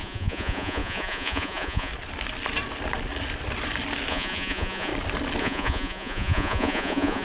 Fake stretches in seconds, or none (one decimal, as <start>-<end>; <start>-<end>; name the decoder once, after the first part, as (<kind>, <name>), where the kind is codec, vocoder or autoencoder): 0.0-1.9 (vocoder, Vocos); 4.1-4.9; 5.4-7.2